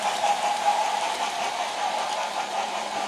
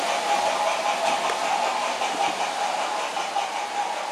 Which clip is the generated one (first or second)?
first